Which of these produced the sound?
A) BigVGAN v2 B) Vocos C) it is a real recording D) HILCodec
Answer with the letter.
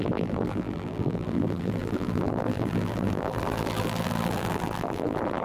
A